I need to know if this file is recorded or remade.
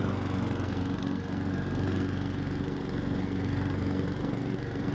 remade